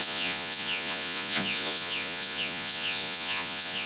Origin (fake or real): fake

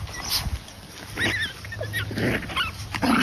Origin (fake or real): real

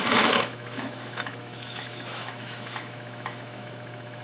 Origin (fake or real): fake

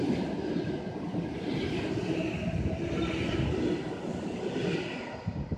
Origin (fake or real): real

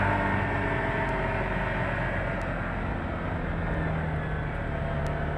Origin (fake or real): real